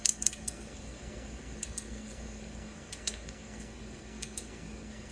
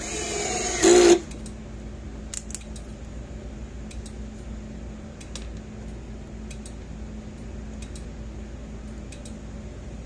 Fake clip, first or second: first